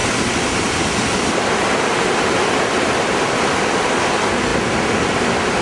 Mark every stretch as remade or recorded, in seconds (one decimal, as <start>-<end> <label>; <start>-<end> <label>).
0.0-5.6 recorded

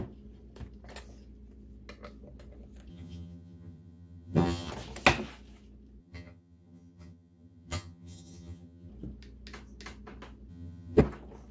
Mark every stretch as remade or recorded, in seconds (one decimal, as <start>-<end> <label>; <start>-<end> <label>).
0.0-2.9 recorded; 2.9-4.7 remade; 4.7-6.0 recorded; 6.0-8.9 remade; 8.9-10.5 recorded; 10.5-11.0 remade; 11.0-11.5 recorded

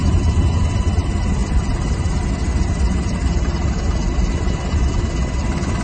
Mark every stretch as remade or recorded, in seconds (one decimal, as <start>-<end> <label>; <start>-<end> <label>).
0.0-5.8 recorded

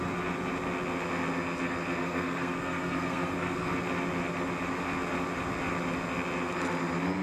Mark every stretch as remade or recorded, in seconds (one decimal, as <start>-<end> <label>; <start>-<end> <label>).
0.0-2.0 recorded; 2.0-3.7 remade; 3.7-7.2 recorded